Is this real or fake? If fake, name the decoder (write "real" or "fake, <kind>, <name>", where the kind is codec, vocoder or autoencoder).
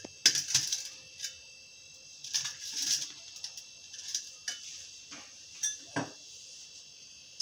real